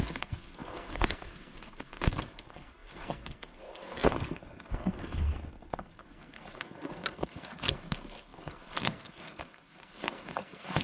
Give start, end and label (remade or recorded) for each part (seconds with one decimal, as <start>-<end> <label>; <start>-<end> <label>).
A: 0.0-10.8 remade